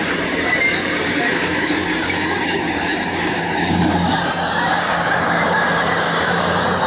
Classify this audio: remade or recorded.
remade